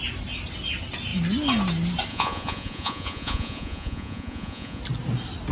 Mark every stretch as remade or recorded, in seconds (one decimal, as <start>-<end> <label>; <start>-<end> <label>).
0.0-2.1 recorded; 2.1-4.8 remade; 4.8-5.5 recorded